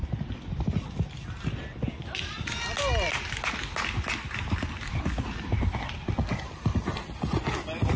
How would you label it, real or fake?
real